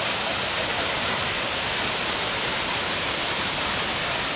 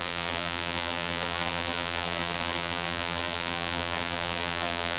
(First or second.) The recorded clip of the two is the first